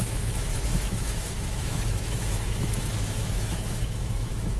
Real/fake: fake